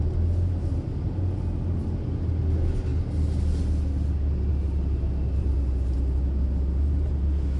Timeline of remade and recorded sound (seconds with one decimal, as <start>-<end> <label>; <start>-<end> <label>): 0.0-7.6 recorded